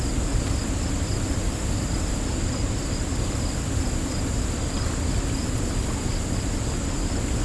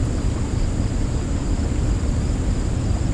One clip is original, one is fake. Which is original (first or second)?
first